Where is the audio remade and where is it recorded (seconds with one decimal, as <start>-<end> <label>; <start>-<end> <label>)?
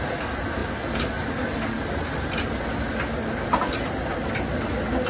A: 0.0-5.1 recorded